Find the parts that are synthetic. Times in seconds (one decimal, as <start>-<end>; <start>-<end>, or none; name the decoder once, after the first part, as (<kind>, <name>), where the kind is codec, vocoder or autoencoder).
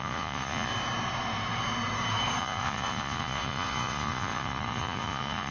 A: 0.0-0.7 (vocoder, Vocos); 2.4-5.5